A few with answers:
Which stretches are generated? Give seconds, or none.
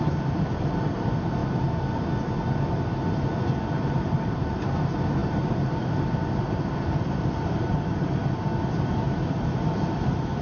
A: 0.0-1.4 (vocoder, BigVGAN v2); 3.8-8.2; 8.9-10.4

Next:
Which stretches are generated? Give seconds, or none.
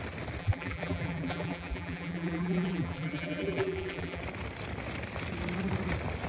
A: 0.4-4.2 (vocoder, BigVGAN v2)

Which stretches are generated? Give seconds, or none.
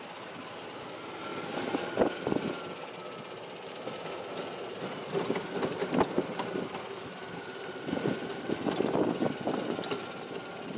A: 1.3-2.0 (vocoder, BigVGAN v2)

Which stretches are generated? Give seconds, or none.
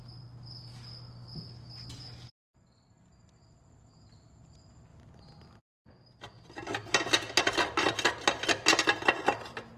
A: none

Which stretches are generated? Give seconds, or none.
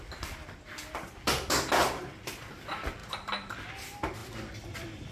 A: 3.0-3.5 (vocoder, BigVGAN v2); 4.2-5.1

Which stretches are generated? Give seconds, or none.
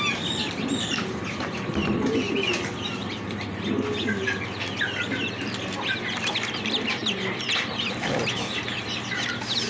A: 0.0-9.7 (vocoder, BigVGAN v2)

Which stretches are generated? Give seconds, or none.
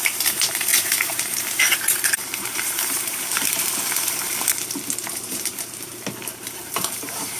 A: 0.0-3.3 (vocoder, BigVGAN v2); 5.0-5.9; 6.4-7.4